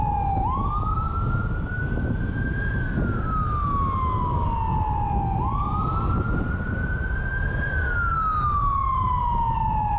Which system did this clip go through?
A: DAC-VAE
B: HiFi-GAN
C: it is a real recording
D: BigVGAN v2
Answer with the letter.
C